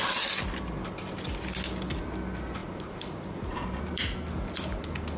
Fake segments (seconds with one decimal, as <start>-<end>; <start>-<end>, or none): 2.6-4.0